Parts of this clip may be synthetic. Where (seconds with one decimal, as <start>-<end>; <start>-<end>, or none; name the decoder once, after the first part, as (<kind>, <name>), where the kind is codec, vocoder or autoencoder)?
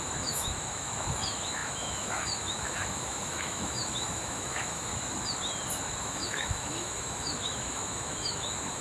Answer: 0.0-4.9 (autoencoder, DAC-VAE); 6.0-8.8